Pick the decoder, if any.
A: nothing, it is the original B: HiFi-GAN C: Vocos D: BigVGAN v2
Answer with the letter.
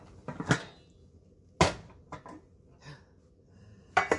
A